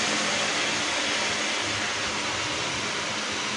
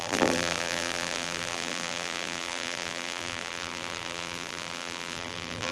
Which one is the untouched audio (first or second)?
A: first